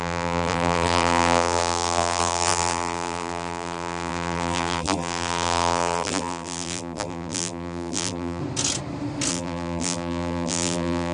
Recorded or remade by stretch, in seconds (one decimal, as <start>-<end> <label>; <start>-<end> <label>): 0.0-8.4 remade; 8.4-9.3 recorded; 9.3-11.1 remade